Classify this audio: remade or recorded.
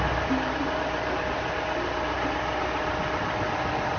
recorded